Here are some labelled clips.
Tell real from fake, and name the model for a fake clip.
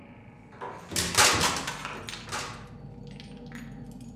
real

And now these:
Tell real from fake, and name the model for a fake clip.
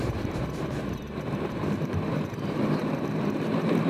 fake, vocoder, BigVGAN v2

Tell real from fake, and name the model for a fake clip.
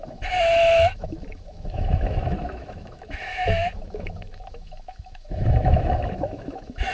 fake, autoencoder, DAC-VAE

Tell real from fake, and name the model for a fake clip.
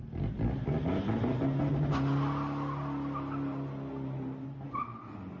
real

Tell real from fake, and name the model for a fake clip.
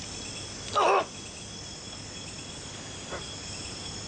real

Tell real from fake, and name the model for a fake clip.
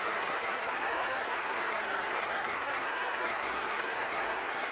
fake, codec, SNAC